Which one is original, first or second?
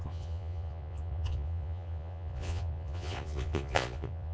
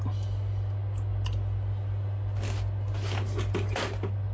second